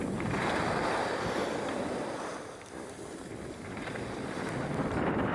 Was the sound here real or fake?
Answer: fake